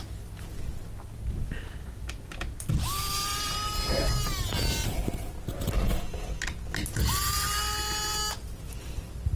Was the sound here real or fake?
real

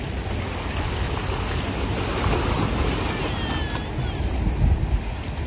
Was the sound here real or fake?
real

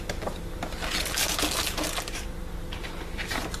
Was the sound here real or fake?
real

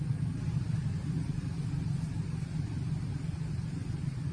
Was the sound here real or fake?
real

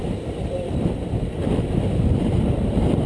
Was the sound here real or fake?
fake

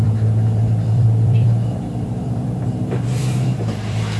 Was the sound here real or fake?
fake